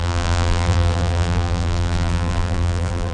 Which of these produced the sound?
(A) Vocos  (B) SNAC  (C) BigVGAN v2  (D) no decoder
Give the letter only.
C